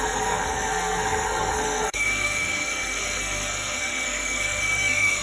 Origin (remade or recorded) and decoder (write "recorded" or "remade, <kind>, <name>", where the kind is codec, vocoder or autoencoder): remade, codec, SNAC